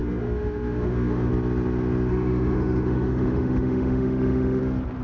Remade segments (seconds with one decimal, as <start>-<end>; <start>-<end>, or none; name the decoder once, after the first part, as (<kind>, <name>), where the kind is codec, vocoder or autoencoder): 0.0-1.3 (autoencoder, DAC-VAE); 2.1-4.6